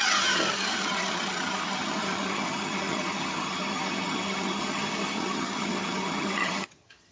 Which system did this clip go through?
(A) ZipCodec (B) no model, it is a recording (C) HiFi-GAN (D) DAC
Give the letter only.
C